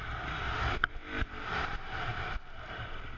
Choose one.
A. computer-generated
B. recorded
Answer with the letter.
B